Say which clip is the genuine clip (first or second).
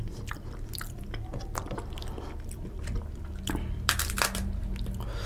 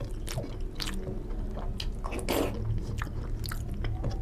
second